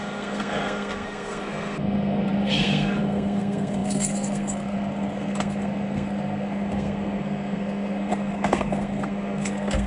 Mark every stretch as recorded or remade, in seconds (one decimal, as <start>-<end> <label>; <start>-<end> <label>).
0.0-9.9 remade

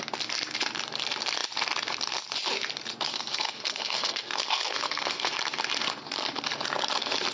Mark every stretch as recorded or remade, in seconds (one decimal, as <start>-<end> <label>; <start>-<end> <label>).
0.0-3.1 recorded; 3.1-5.3 remade; 5.3-7.3 recorded

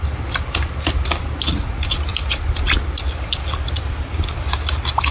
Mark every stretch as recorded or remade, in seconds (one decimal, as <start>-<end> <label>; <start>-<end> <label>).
0.0-5.1 recorded

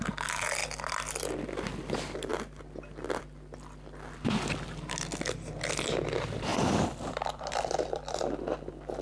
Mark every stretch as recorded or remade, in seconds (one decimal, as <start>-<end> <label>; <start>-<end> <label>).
0.0-6.5 recorded; 6.5-8.4 remade; 8.4-9.0 recorded

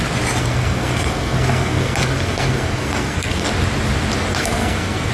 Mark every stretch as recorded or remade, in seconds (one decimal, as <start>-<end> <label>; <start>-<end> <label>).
0.0-0.4 recorded; 0.4-3.5 remade; 3.5-4.3 recorded; 4.3-5.1 remade

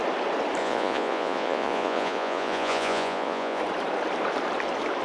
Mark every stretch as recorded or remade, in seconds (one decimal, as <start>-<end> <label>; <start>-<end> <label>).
0.0-0.6 recorded; 0.6-3.6 remade; 3.6-5.0 recorded

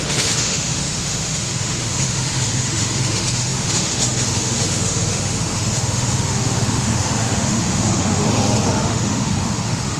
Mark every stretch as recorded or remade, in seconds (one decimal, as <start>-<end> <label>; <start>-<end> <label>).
0.0-10.0 remade

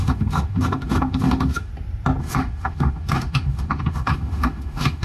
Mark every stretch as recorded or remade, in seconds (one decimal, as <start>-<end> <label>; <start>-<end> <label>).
0.0-1.7 remade; 1.7-2.2 recorded; 2.2-5.0 remade